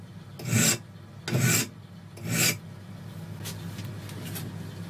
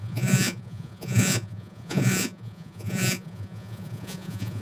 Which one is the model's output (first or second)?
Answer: second